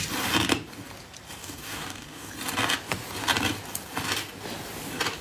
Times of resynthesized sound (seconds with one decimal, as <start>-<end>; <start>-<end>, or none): 1.4-2.3